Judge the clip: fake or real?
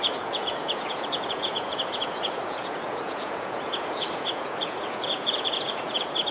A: fake